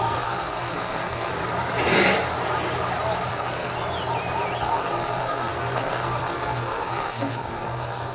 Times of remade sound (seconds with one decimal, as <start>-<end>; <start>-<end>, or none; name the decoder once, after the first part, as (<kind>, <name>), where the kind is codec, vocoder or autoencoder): 0.0-1.3 (codec, SNAC); 3.3-3.7; 4.6-8.1